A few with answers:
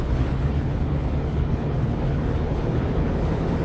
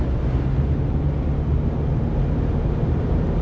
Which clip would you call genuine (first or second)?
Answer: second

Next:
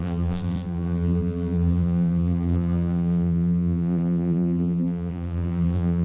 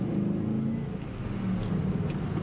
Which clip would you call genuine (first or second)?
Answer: second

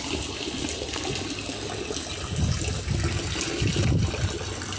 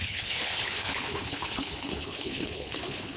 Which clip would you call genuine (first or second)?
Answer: first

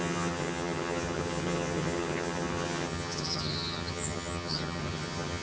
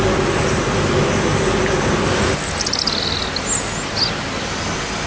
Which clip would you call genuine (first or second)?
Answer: second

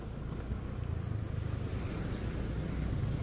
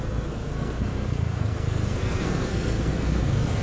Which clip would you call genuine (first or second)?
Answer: first